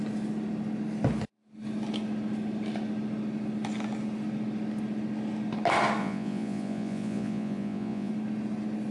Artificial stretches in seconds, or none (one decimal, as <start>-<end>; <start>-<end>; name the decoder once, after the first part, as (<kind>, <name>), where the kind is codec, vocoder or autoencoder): 6.0-8.1 (vocoder, Vocos)